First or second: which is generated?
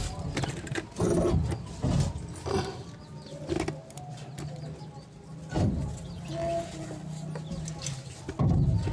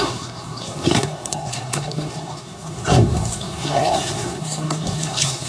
second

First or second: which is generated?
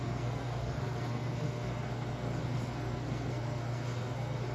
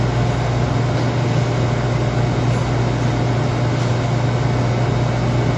first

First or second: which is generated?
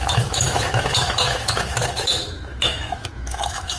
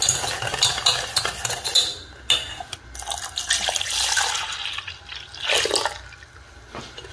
first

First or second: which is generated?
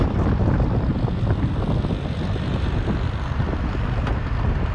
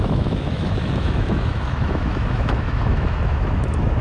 second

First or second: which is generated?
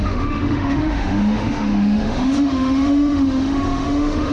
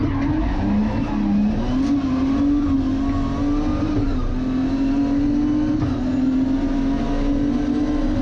first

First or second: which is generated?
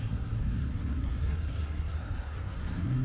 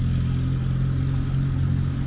first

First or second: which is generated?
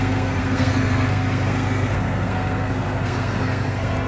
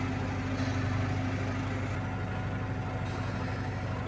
first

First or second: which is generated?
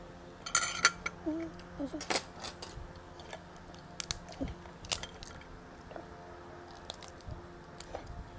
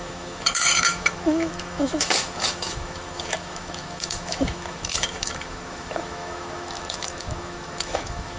second